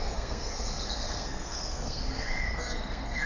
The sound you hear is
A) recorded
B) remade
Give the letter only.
B